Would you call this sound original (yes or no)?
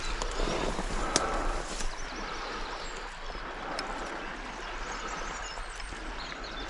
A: yes